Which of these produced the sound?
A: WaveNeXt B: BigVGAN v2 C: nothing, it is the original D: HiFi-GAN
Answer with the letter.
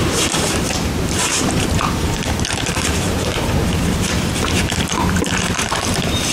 B